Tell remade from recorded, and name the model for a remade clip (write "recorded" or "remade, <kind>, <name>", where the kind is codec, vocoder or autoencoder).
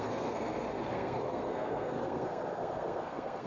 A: remade, codec, SNAC